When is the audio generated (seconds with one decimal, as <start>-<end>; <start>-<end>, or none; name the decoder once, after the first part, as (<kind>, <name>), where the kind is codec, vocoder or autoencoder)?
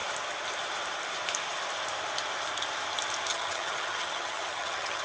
3.3-5.0 (vocoder, HiFi-GAN)